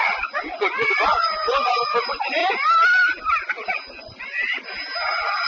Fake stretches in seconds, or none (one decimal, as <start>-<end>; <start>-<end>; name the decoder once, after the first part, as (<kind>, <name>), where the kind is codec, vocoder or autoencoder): 0.0-2.4 (vocoder, Vocos); 4.0-4.5; 5.1-5.5